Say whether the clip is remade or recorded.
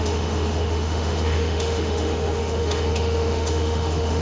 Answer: remade